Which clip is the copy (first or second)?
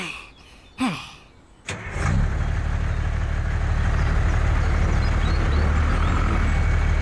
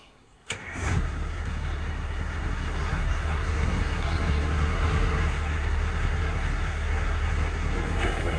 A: second